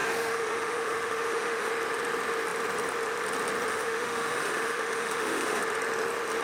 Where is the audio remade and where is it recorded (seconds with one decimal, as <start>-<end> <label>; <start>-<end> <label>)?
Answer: 0.0-1.7 remade; 1.7-3.7 recorded; 3.7-5.6 remade; 5.6-6.4 recorded

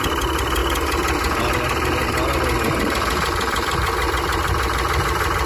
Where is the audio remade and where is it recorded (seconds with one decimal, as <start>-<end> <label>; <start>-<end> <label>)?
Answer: 0.0-0.6 remade; 0.6-1.4 recorded; 1.4-2.0 remade; 2.0-2.5 recorded; 2.5-5.5 remade

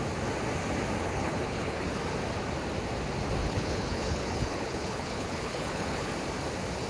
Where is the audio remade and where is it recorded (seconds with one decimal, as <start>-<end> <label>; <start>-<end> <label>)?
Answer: 0.0-1.0 recorded; 1.0-1.9 remade; 1.9-3.4 recorded; 3.4-6.1 remade; 6.1-6.9 recorded

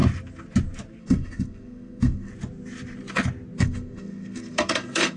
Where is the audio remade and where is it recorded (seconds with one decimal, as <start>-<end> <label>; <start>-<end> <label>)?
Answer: 0.0-1.0 recorded; 1.0-2.3 remade; 2.3-3.6 recorded; 3.6-5.2 remade

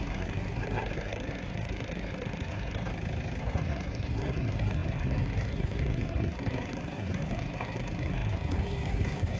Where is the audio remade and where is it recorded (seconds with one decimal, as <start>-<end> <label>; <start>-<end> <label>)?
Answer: 0.0-2.9 remade; 2.9-3.4 recorded; 3.4-9.4 remade

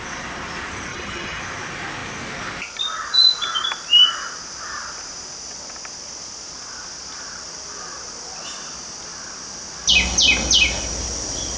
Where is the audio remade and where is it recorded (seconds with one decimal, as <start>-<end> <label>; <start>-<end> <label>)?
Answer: 0.0-0.9 recorded; 0.9-1.4 remade; 1.4-11.6 recorded

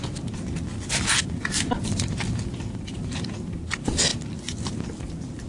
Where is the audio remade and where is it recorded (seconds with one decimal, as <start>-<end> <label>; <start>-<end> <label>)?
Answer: 0.0-0.7 recorded; 0.7-2.9 remade; 2.9-4.1 recorded; 4.1-4.6 remade; 4.6-5.5 recorded

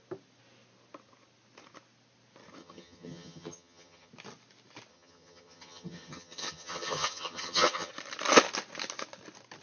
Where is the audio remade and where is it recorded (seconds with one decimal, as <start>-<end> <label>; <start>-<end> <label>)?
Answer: 0.0-2.6 recorded; 2.6-4.1 remade; 4.1-4.9 recorded; 4.9-7.9 remade; 7.9-9.6 recorded